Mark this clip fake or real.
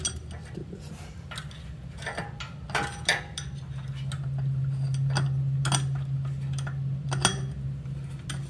real